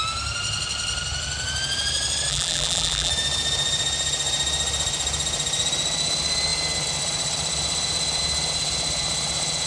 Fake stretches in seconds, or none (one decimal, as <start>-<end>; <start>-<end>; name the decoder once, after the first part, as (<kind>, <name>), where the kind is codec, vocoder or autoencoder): 2.3-3.1 (vocoder, BigVGAN v2)